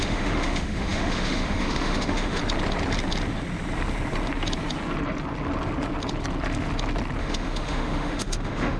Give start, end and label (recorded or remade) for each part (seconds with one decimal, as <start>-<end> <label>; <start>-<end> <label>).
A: 0.0-2.4 remade; 2.4-7.2 recorded; 7.2-8.8 remade